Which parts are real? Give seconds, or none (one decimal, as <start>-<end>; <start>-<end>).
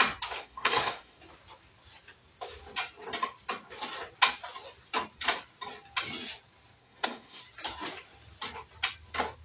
0.0-0.4; 1.2-6.8; 7.4-9.4